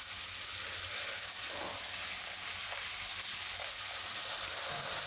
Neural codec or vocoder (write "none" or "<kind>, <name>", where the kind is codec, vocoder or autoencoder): none